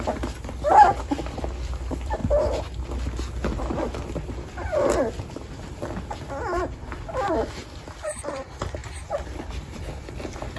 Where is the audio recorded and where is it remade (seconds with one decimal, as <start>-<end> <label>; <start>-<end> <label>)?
0.0-2.2 remade; 2.2-7.3 recorded; 7.3-10.6 remade